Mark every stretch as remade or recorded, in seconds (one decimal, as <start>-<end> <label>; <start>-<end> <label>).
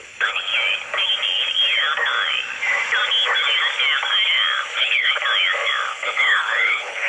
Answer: 0.0-0.5 remade; 0.5-4.8 recorded; 4.8-5.2 remade; 5.2-5.9 recorded; 5.9-7.1 remade